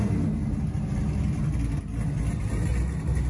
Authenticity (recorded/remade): recorded